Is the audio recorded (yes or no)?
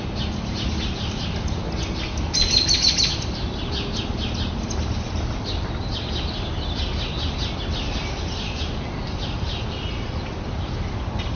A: yes